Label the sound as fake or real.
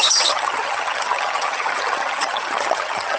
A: fake